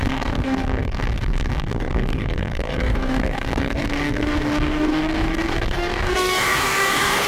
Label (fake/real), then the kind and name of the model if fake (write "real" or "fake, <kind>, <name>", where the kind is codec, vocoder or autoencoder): fake, codec, DAC